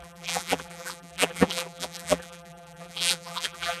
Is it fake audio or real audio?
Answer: fake